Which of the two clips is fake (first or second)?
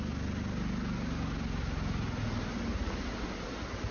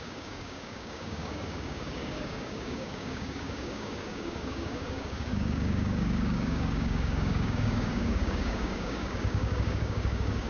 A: second